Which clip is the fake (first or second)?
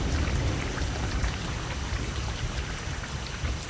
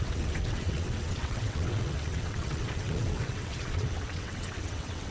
second